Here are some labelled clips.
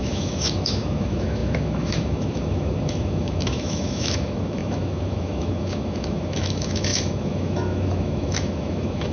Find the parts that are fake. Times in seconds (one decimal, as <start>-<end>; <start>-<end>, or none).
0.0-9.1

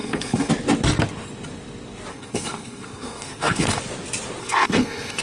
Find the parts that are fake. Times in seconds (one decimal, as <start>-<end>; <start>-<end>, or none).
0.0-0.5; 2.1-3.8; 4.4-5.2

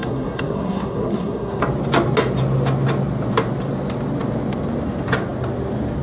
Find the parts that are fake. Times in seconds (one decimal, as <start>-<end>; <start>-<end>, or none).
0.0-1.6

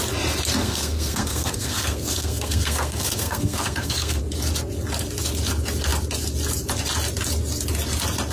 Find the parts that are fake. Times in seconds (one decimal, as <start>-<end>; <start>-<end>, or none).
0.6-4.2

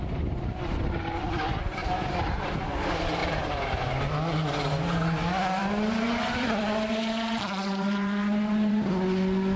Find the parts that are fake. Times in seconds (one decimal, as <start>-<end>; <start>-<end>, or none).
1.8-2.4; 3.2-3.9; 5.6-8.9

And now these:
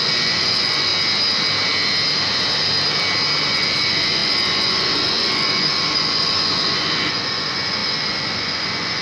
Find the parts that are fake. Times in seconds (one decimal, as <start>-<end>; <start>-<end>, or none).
0.0-0.9; 3.5-9.0

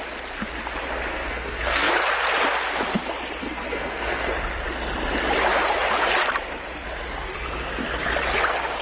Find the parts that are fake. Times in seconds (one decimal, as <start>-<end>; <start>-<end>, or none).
1.1-1.9; 3.4-4.3

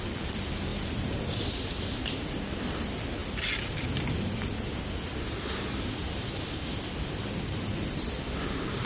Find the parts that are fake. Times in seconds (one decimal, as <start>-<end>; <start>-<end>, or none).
0.7-1.2